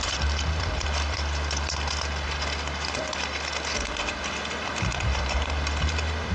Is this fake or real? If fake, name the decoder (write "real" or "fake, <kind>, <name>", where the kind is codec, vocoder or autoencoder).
fake, vocoder, BigVGAN v2